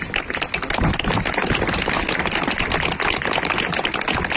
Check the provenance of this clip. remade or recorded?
recorded